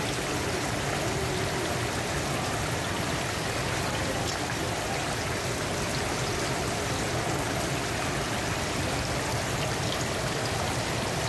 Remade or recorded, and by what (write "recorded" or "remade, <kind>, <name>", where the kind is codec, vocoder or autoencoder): recorded